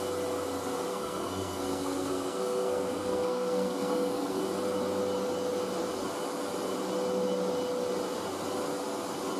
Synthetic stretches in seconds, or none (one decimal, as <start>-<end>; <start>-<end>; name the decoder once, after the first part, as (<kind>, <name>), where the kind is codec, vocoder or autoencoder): 0.9-4.4 (codec, SNAC)